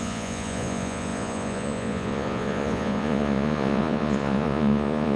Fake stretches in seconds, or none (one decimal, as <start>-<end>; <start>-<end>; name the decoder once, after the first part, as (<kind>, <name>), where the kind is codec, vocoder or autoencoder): 0.0-5.2 (vocoder, Vocos)